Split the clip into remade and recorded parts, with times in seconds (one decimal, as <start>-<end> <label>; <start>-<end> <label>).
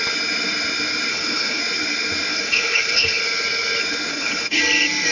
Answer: 0.0-1.1 recorded; 1.1-1.6 remade; 1.6-2.3 recorded; 2.3-3.2 remade; 3.2-4.1 recorded; 4.1-4.6 remade; 4.6-5.1 recorded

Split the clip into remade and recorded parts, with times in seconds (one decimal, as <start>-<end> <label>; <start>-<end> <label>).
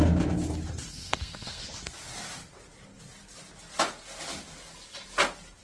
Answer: 0.0-0.9 recorded; 0.9-1.6 remade; 1.6-5.6 recorded